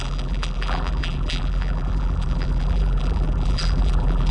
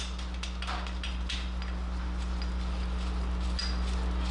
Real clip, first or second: second